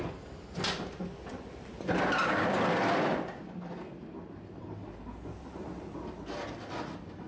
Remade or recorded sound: recorded